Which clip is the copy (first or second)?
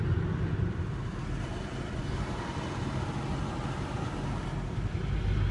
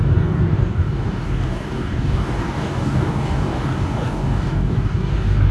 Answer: second